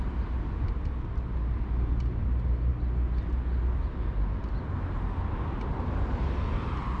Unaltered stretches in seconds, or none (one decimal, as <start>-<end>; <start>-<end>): 0.0-7.0